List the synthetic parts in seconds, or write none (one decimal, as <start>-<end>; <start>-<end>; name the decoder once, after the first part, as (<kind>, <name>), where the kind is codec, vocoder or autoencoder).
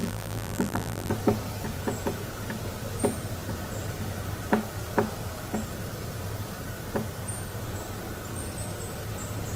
0.0-1.1 (vocoder, BigVGAN v2)